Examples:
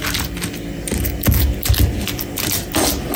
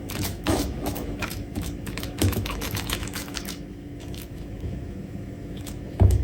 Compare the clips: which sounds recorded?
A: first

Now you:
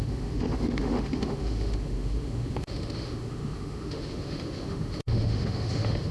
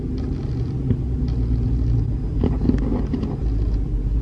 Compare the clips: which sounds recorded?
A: second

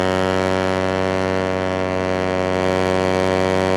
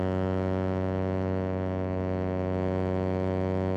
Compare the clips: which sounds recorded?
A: first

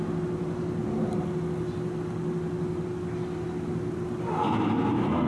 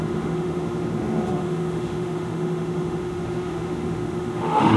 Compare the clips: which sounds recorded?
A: first